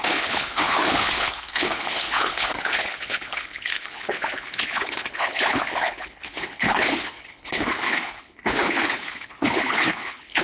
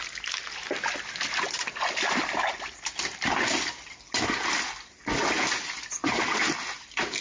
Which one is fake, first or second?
first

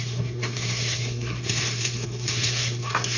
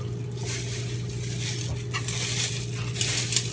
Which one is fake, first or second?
first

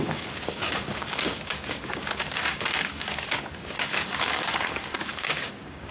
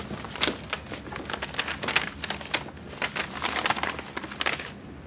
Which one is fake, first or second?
first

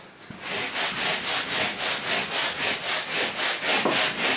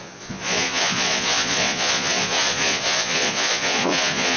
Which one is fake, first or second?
second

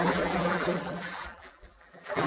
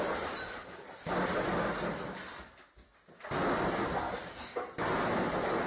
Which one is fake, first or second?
first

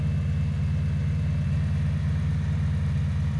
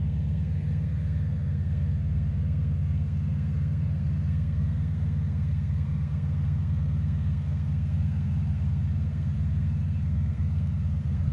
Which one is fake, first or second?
second